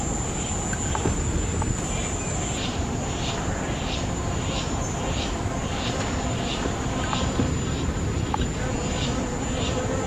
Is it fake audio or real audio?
real